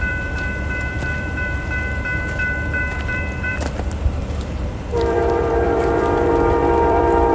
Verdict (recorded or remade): remade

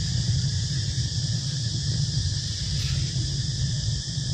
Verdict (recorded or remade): remade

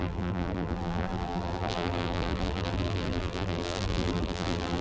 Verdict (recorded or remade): remade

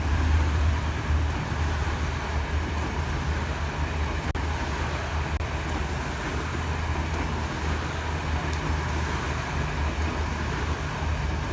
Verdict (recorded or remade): recorded